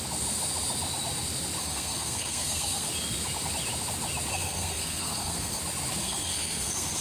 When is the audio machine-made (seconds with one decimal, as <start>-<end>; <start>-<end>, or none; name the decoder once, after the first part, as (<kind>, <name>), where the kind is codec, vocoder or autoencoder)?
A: 1.6-2.9 (codec, SNAC); 4.3-5.6; 6.0-7.0